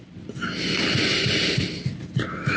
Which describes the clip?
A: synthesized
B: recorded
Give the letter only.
B